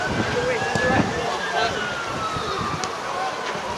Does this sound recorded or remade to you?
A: recorded